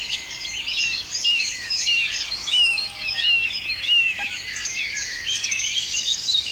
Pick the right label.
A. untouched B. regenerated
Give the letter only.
B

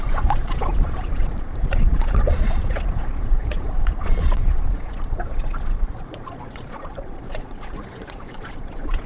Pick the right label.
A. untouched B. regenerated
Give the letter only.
B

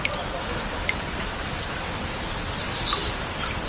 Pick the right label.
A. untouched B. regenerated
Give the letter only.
A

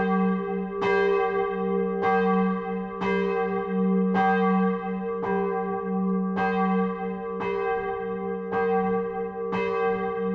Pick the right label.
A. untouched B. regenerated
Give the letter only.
A